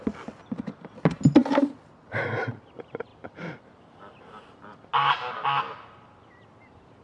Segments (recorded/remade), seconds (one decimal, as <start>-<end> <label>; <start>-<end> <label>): 0.0-7.0 recorded